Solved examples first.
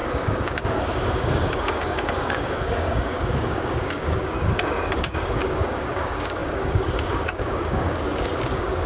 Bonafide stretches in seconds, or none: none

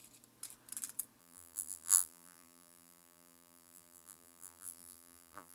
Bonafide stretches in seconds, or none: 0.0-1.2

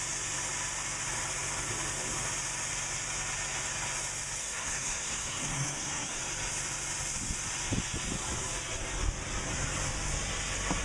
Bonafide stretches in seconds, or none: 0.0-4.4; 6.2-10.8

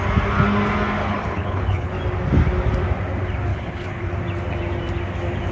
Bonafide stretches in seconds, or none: 0.0-1.0; 2.0-3.5; 4.1-5.5

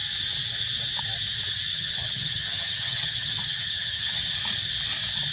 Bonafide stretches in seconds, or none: 0.0-1.7; 4.3-5.3

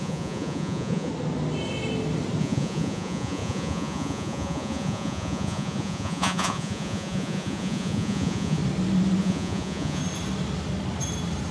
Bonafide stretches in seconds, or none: 1.1-2.4; 8.6-9.2; 10.0-11.5

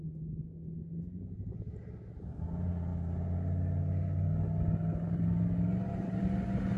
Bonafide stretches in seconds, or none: 0.0-6.8

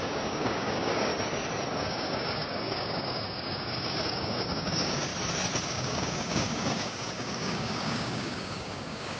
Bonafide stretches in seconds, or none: 1.1-1.8; 5.1-5.7